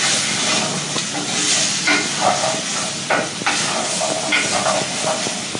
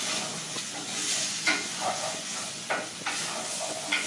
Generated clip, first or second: second